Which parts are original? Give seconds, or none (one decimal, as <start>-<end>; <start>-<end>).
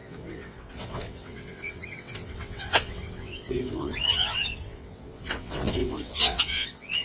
none